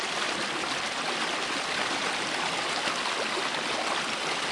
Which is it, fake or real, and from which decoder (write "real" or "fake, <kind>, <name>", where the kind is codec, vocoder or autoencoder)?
real